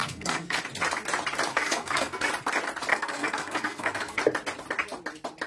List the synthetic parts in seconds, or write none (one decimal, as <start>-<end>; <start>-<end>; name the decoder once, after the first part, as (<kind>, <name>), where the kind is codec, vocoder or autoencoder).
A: 0.0-0.6 (codec, SNAC); 1.5-2.3; 2.9-4.2